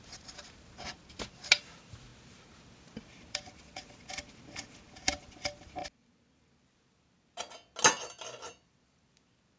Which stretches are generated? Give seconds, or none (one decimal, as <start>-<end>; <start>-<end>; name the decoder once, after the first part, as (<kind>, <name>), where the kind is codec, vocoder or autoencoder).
none

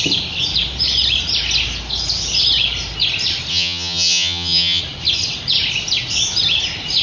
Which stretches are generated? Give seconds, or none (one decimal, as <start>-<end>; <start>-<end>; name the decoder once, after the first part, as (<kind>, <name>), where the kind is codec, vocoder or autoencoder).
3.5-4.8 (vocoder, HiFi-GAN)

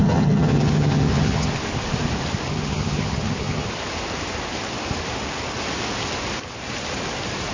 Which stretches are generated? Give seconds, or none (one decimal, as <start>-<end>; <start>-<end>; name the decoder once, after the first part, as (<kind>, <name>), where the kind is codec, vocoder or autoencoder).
0.0-1.5 (vocoder, HiFi-GAN); 2.5-3.7

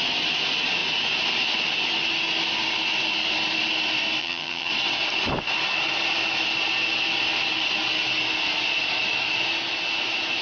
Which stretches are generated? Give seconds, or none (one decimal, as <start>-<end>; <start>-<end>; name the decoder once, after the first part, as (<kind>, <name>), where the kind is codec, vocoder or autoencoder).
4.2-4.7 (vocoder, HiFi-GAN)

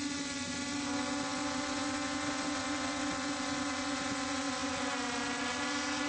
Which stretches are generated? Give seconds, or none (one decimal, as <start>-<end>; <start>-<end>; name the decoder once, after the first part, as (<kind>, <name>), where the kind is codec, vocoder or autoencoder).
none

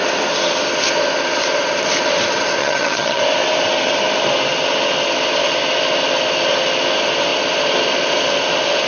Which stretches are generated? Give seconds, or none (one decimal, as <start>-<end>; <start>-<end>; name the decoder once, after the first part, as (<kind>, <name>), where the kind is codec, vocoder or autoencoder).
2.6-3.2 (vocoder, HiFi-GAN)

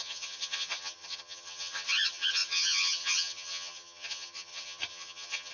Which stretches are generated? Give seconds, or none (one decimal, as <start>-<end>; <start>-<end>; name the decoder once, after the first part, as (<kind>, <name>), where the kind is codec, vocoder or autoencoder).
0.0-5.5 (vocoder, HiFi-GAN)

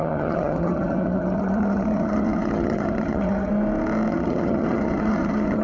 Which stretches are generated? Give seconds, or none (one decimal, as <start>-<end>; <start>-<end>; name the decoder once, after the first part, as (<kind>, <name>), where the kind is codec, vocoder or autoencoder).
0.0-3.5 (vocoder, HiFi-GAN); 4.1-5.6